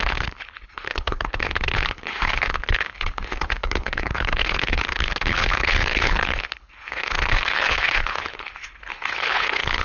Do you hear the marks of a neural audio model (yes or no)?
yes